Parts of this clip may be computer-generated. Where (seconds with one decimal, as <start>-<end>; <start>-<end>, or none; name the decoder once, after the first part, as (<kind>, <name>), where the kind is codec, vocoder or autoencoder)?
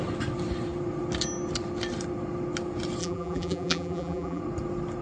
3.0-4.4 (vocoder, BigVGAN v2)